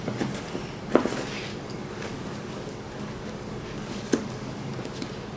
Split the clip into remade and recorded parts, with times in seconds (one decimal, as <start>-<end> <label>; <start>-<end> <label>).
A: 0.0-1.5 recorded; 1.5-4.7 remade; 4.7-5.4 recorded